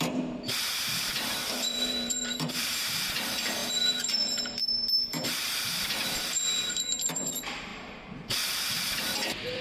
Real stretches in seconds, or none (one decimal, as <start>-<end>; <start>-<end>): none

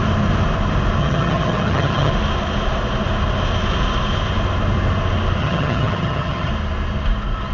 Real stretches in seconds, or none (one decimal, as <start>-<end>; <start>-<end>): 0.0-1.0; 2.1-5.4; 6.5-7.5

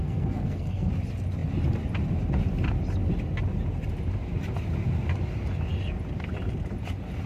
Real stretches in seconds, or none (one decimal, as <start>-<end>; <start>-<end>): 0.9-7.3

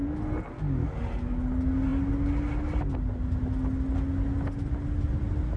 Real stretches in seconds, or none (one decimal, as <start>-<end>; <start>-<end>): 0.0-5.6